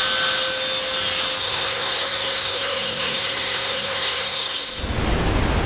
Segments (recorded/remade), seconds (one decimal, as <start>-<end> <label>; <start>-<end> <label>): 0.0-1.4 recorded; 1.4-4.8 remade; 4.8-5.7 recorded